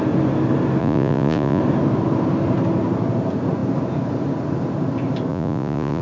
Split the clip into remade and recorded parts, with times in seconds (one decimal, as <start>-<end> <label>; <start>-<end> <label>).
0.0-0.8 recorded; 0.8-1.6 remade; 1.6-5.3 recorded; 5.3-6.0 remade